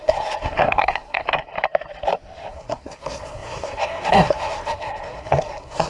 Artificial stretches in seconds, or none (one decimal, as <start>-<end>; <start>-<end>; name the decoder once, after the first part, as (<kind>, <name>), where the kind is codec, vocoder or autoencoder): 0.0-1.5 (codec, SNAC); 2.5-5.9